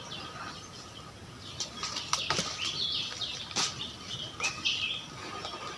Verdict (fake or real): real